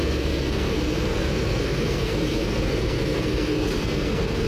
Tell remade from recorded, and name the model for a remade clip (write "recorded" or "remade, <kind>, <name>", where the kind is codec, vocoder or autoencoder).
remade, codec, SNAC